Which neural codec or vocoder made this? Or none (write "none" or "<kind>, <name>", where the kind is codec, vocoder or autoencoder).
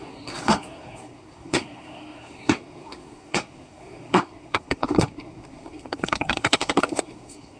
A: codec, SNAC